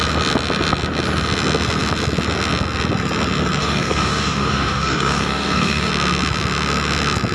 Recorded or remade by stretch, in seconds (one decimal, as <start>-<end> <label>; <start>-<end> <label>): 0.0-3.6 recorded; 3.6-5.9 remade; 5.9-7.3 recorded

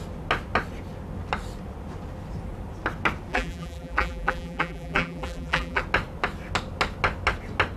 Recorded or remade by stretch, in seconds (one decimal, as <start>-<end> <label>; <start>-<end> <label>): 0.0-3.3 recorded; 3.3-5.8 remade; 5.8-7.8 recorded

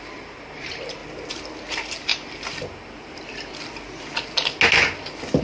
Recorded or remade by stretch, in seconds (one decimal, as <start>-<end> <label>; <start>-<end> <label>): 0.0-1.0 remade; 1.0-1.7 recorded; 1.7-2.1 remade; 2.1-5.4 recorded

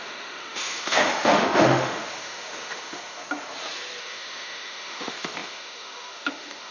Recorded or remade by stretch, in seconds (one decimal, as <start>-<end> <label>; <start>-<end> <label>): 0.0-3.2 remade; 3.2-4.0 recorded; 4.0-6.7 remade

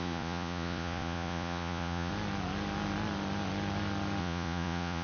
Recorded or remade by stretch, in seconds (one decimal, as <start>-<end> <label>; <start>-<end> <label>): 0.0-2.1 remade; 2.1-4.2 recorded; 4.2-5.0 remade

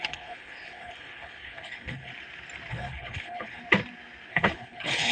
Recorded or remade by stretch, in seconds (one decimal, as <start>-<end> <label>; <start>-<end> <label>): 0.0-2.1 remade; 2.1-2.7 recorded; 2.7-3.6 remade; 3.6-4.3 recorded; 4.3-5.1 remade

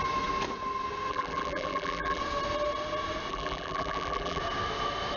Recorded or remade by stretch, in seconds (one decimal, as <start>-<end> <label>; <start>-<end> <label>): 0.0-1.1 recorded; 1.1-2.2 remade; 2.2-3.3 recorded; 3.3-4.4 remade; 4.4-5.2 recorded